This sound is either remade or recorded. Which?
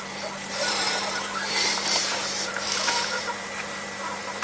remade